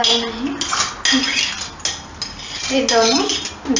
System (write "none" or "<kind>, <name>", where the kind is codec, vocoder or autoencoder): none